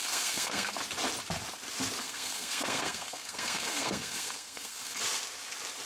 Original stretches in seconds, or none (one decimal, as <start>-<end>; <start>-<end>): 0.7-2.0; 5.0-5.9